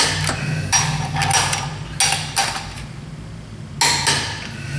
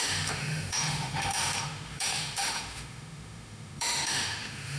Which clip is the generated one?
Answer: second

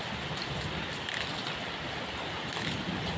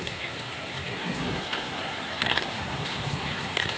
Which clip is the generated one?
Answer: second